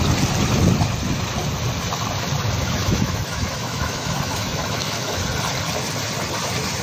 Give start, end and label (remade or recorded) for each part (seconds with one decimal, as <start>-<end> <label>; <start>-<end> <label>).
0.0-2.8 recorded; 2.8-5.2 remade; 5.2-6.8 recorded